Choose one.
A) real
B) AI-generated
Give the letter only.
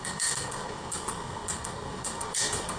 B